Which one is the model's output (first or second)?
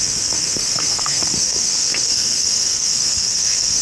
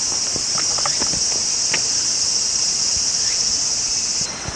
first